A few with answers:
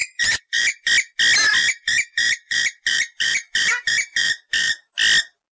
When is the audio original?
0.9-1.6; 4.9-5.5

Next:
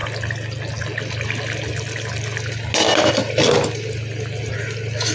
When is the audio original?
0.0-5.1

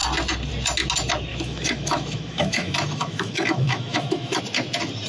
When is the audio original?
0.0-1.3; 4.4-5.1

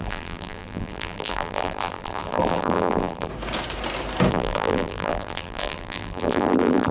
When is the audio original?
3.3-4.3

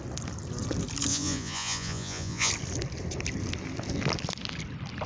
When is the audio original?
0.0-1.1; 2.5-5.1